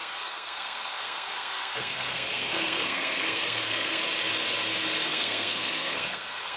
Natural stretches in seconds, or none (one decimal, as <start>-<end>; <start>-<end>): 4.0-5.1